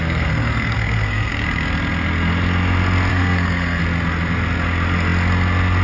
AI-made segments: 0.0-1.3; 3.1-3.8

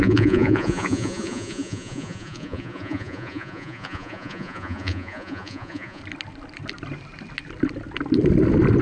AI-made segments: 0.0-6.0

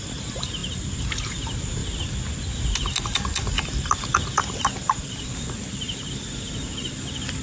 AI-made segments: 0.0-1.8; 3.6-7.4

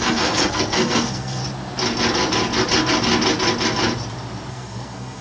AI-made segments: 0.0-1.4; 4.5-5.2